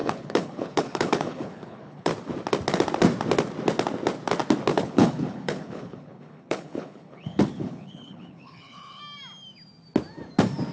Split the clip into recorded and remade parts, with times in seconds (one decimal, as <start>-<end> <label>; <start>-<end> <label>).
0.0-2.1 remade; 2.1-4.7 recorded; 4.7-9.0 remade; 9.0-10.7 recorded